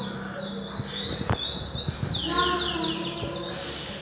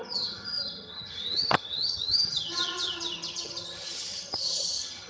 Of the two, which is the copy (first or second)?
second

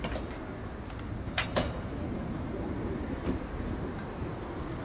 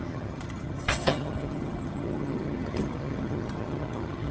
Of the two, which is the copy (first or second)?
second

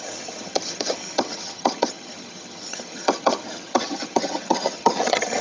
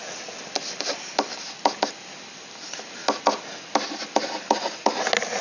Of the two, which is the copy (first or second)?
first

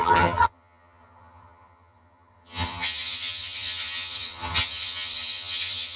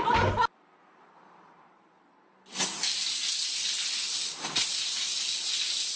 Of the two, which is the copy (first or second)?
first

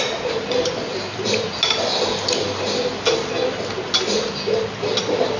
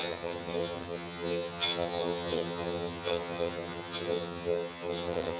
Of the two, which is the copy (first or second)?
second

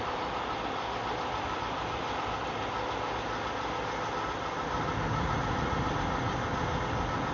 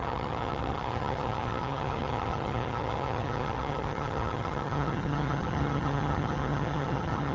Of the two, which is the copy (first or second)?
second